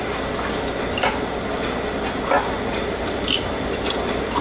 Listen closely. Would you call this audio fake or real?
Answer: real